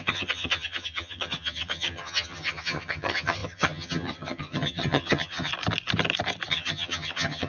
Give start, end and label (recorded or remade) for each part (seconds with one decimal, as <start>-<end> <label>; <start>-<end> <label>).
0.0-5.5 remade; 5.5-6.5 recorded; 6.5-7.5 remade